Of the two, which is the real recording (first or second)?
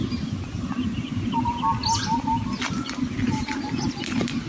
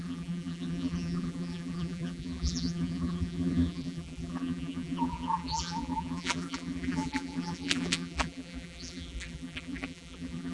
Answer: first